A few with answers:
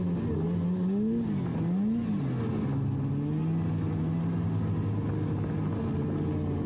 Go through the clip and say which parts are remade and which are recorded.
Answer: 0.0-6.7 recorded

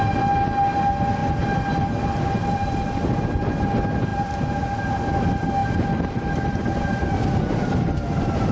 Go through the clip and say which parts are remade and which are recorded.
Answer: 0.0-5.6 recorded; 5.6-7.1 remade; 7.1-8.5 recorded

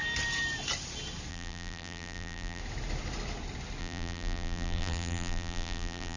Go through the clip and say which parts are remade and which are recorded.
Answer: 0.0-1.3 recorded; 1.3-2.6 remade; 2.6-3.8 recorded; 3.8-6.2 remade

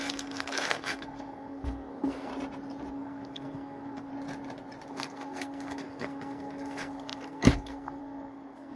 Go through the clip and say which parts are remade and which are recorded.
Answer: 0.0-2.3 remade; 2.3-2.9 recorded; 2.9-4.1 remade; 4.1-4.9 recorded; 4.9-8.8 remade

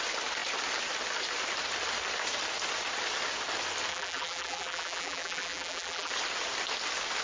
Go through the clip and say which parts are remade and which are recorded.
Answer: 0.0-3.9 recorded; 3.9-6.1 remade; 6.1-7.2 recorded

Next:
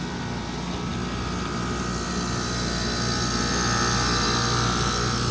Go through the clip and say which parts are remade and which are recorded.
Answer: 0.0-5.3 recorded

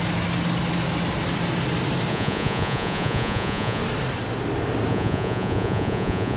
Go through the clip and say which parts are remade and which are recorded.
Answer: 0.0-2.1 recorded; 2.1-3.8 remade; 3.8-4.9 recorded; 4.9-6.4 remade